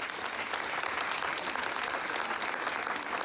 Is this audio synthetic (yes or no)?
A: no